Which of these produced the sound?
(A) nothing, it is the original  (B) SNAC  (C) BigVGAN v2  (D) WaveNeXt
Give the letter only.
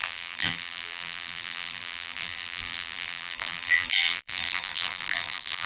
C